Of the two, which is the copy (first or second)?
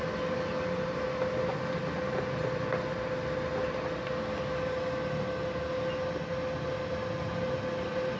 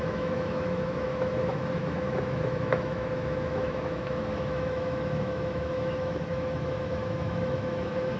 second